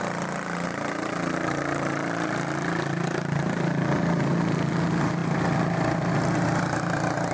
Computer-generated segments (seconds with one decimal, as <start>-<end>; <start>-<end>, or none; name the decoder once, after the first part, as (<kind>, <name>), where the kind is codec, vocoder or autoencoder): none